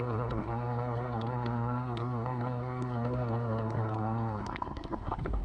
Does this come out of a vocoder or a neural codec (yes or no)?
yes